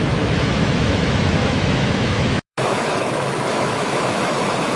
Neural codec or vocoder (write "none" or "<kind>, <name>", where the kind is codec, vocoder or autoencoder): autoencoder, DAC-VAE